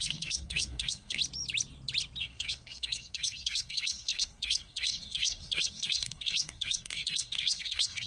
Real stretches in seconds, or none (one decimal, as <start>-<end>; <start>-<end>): 1.2-2.2